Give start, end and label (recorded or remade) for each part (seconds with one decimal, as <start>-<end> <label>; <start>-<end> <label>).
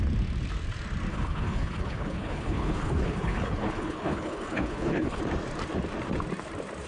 0.0-1.1 recorded; 1.1-5.2 remade; 5.2-6.9 recorded